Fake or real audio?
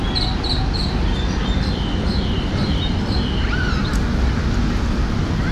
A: real